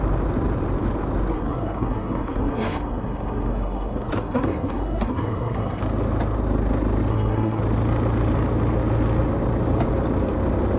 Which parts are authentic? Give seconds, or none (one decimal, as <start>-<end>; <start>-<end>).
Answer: 0.0-1.3; 5.8-7.1; 7.6-10.8